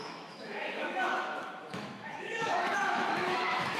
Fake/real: fake